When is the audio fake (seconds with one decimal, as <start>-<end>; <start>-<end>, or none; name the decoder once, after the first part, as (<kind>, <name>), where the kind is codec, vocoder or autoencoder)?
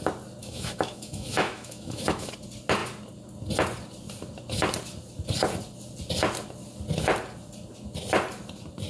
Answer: 0.4-2.3 (autoencoder, DAC-VAE)